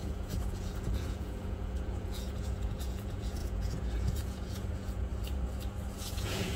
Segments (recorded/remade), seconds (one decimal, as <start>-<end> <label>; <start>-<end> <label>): 0.0-5.1 remade; 5.1-5.9 recorded; 5.9-6.6 remade